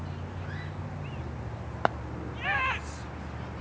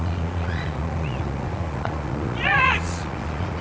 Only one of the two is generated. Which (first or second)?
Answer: second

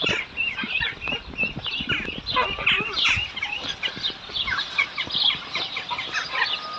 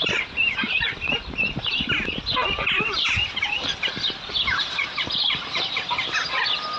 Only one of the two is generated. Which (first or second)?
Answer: second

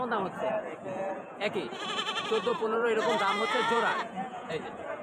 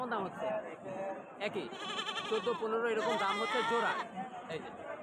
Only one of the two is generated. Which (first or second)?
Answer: first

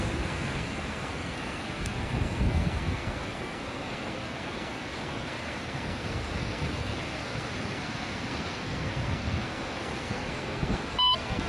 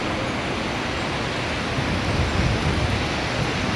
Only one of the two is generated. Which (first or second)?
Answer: first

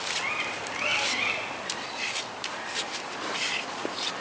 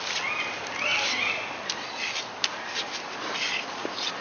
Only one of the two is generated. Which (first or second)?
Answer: first